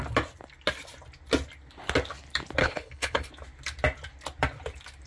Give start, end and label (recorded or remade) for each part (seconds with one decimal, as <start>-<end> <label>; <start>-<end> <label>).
0.0-2.6 recorded; 2.6-3.3 remade; 3.3-5.1 recorded